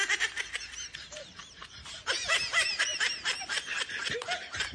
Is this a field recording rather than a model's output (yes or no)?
no